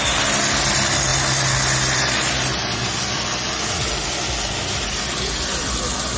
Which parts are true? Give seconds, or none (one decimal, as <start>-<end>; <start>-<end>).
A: 0.0-6.2